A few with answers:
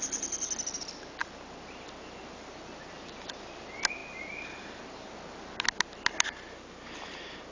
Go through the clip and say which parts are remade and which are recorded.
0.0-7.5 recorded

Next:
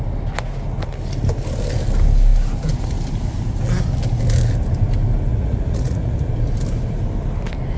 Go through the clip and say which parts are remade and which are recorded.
0.0-5.3 recorded; 5.3-6.3 remade; 6.3-7.8 recorded

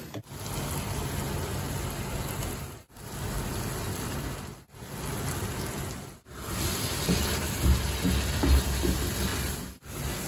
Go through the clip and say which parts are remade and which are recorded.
0.0-10.3 recorded

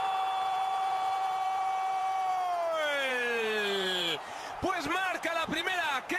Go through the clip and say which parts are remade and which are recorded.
0.0-2.3 remade; 2.3-3.1 recorded; 3.1-6.2 remade

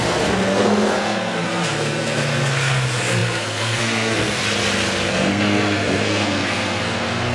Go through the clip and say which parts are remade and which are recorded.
0.0-4.4 remade; 4.4-5.1 recorded; 5.1-7.3 remade

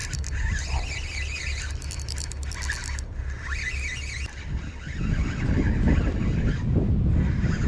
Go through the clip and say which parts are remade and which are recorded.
0.0-7.7 recorded

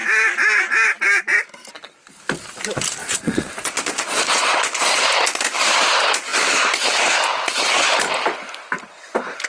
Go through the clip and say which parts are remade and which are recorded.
0.0-3.0 recorded; 3.0-5.0 remade; 5.0-9.5 recorded